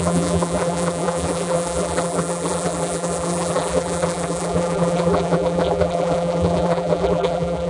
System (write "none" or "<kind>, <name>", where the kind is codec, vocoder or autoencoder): vocoder, BigVGAN v2